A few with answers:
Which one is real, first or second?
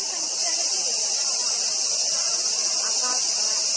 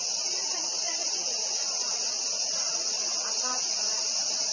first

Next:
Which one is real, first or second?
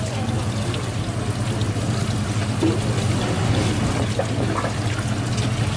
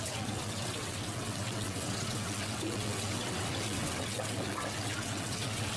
first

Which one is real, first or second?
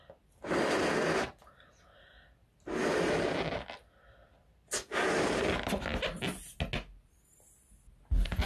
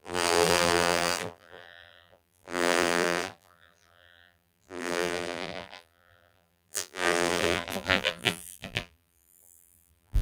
first